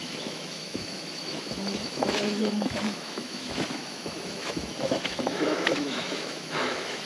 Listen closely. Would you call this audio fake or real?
fake